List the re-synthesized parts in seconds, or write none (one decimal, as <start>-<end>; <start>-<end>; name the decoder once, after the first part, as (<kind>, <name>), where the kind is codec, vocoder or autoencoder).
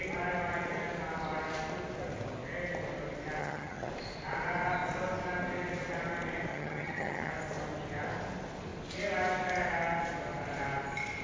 3.4-3.9 (vocoder, HiFi-GAN); 6.5-7.3